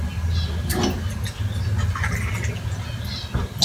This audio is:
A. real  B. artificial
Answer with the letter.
A